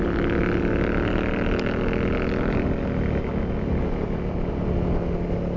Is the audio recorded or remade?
recorded